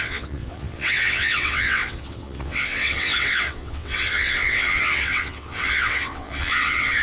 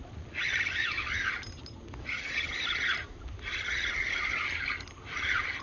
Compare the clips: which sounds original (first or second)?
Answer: second